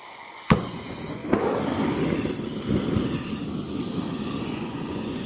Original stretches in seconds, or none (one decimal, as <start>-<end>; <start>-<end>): 1.2-4.4